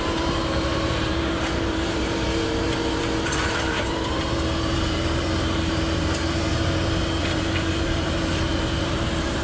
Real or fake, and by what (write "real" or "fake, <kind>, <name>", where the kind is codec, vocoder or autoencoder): fake, vocoder, BigVGAN v2